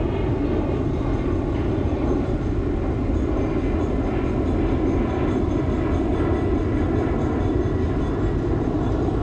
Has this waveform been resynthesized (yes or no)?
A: no